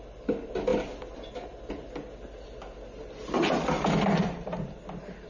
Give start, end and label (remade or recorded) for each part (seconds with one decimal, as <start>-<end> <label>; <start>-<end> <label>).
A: 0.0-5.3 recorded